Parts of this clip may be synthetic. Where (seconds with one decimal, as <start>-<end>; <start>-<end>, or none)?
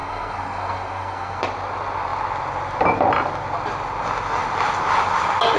0.0-1.4